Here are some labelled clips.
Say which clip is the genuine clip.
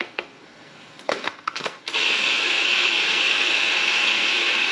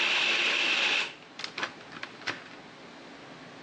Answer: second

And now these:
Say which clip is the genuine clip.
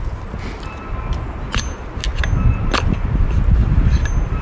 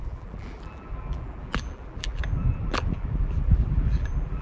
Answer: first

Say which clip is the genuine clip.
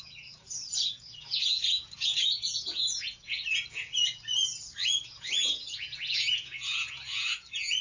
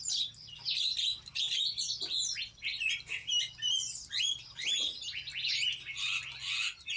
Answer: second